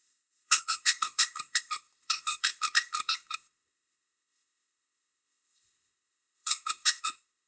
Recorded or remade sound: remade